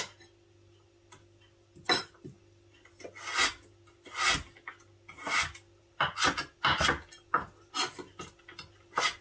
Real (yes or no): yes